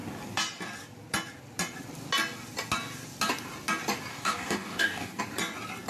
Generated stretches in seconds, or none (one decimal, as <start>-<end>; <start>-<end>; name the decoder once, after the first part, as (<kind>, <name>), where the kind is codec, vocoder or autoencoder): 4.1-5.2 (codec, DAC)